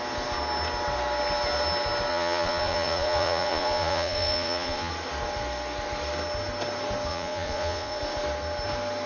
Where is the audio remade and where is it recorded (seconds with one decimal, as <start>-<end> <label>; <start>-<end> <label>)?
0.0-2.1 recorded; 2.1-4.9 remade; 4.9-7.1 recorded; 7.1-8.0 remade; 8.0-9.1 recorded